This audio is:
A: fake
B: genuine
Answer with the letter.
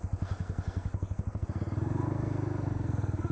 A